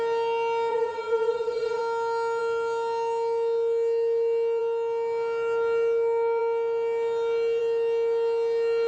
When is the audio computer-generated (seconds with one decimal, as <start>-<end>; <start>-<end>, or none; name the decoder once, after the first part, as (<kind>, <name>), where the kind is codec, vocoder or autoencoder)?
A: 0.7-1.8 (vocoder, Vocos)